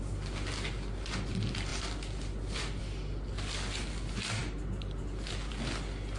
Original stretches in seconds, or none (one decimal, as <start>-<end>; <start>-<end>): 0.0-6.2